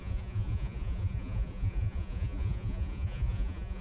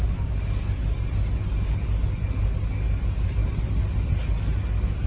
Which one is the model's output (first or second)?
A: first